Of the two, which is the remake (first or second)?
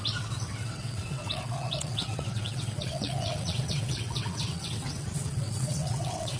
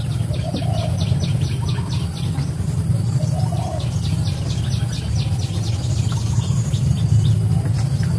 first